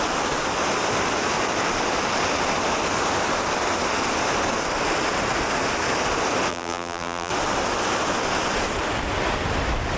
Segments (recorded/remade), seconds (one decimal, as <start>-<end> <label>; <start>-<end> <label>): 0.0-6.5 recorded; 6.5-7.3 remade; 7.3-10.0 recorded